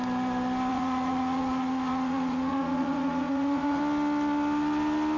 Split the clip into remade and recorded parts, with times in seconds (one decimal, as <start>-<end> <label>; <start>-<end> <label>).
0.0-0.7 recorded; 0.7-3.8 remade; 3.8-5.2 recorded